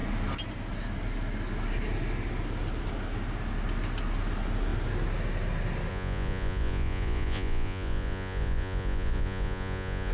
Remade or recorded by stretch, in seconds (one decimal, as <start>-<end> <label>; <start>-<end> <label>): 0.0-5.9 recorded; 5.9-10.1 remade

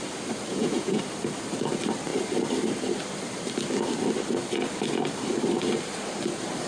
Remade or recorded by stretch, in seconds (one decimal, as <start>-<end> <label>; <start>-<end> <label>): 0.0-0.5 recorded; 0.5-1.0 remade; 1.0-6.7 recorded

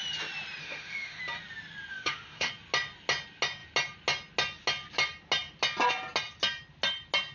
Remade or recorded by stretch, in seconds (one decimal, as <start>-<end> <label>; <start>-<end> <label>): 0.0-0.6 recorded; 0.6-1.2 remade; 1.2-1.9 recorded; 1.9-2.5 remade; 2.5-7.3 recorded

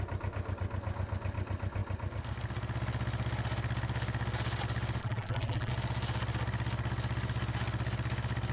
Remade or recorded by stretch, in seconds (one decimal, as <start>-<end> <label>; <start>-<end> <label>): 0.0-5.0 recorded; 5.0-5.7 remade; 5.7-8.5 recorded

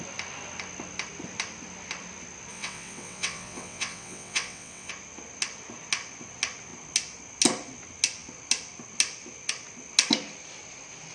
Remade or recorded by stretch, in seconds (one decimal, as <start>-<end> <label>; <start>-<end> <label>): 0.0-2.5 recorded; 2.5-4.9 remade; 4.9-11.1 recorded

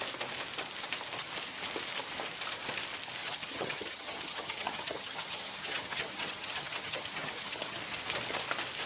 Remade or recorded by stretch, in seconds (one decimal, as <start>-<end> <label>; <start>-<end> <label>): 0.0-3.2 recorded; 3.2-7.8 remade; 7.8-8.9 recorded

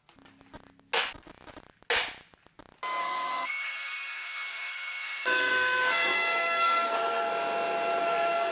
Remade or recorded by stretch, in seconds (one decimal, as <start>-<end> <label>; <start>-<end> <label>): 0.0-3.0 recorded; 3.0-7.3 remade; 7.3-8.0 recorded; 8.0-8.5 remade